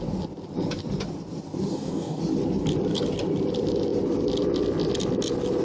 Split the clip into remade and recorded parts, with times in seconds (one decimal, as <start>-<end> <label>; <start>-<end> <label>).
0.0-1.7 recorded; 1.7-2.2 remade; 2.2-5.6 recorded